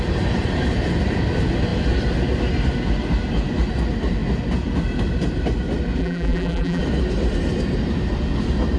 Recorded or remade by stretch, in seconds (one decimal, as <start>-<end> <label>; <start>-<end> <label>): 0.0-6.0 recorded; 6.0-6.8 remade; 6.8-8.8 recorded